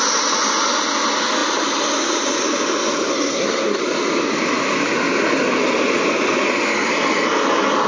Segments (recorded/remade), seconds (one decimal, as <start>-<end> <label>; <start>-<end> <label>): 0.0-3.1 recorded; 3.1-3.8 remade; 3.8-7.9 recorded